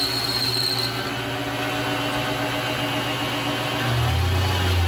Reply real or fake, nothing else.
real